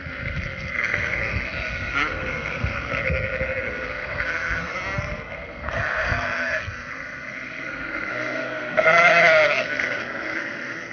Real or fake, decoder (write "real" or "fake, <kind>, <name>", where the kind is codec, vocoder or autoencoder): fake, codec, SNAC